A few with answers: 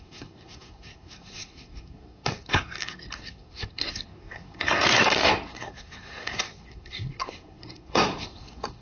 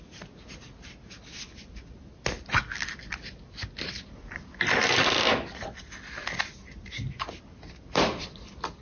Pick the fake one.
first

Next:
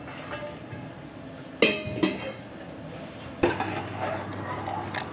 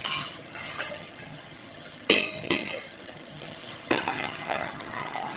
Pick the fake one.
second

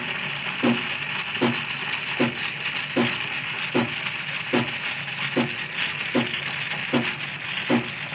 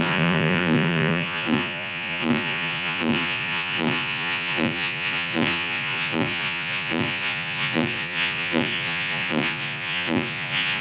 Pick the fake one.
second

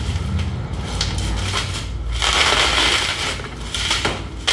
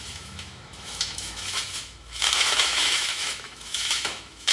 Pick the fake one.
second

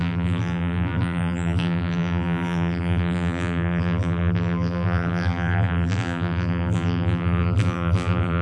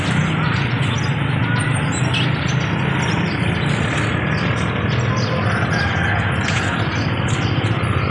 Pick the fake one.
first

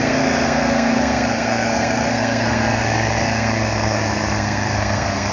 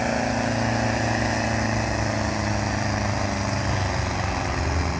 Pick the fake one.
first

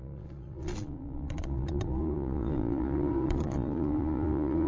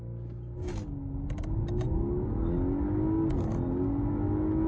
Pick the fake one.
first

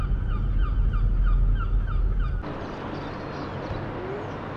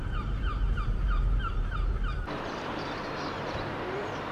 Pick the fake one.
second